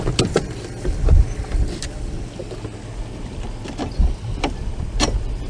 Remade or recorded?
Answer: recorded